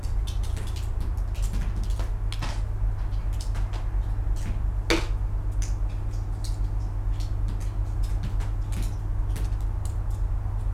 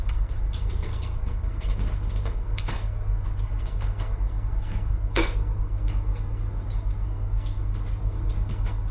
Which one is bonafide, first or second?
first